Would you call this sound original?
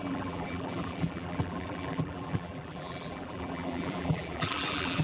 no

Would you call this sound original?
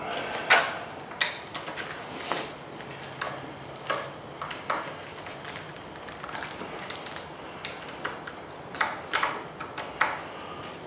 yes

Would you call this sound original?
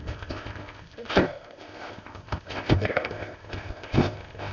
no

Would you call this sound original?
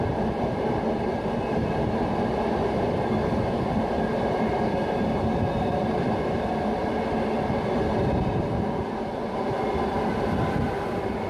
yes